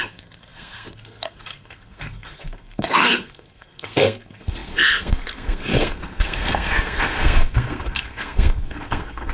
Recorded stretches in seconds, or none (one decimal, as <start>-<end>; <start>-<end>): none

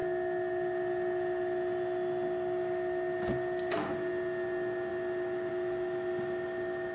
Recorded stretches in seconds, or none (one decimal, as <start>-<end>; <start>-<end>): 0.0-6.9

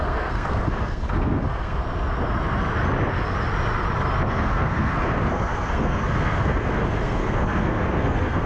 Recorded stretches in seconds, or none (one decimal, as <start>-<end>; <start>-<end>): 1.8-4.3

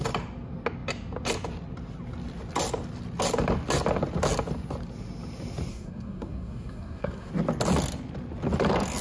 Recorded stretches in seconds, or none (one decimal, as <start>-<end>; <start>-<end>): 0.0-5.7; 7.3-9.0

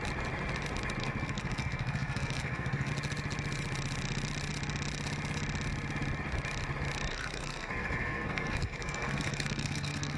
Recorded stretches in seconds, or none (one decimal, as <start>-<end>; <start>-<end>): 0.0-1.0; 2.9-7.1

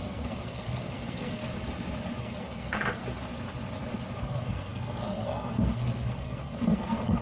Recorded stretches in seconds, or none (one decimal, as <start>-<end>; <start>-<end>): 1.4-2.2; 3.0-4.2

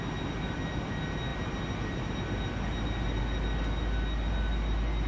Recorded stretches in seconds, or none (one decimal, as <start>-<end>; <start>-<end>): 0.0-5.1